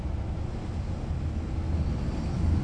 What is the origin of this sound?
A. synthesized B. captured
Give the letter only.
B